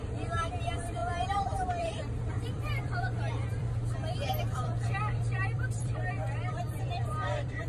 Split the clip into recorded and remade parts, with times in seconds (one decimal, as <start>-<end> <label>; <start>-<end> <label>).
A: 0.0-7.7 remade

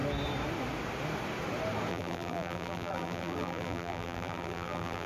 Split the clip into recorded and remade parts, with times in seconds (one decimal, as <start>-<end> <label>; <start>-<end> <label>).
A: 0.0-1.9 recorded; 1.9-5.1 remade